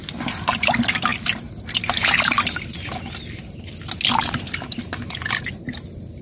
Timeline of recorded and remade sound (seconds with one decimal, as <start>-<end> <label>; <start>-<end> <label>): 0.0-6.2 recorded